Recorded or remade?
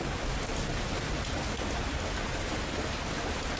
recorded